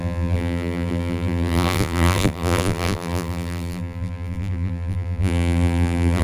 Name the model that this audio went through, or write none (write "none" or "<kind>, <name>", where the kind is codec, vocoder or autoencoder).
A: vocoder, BigVGAN v2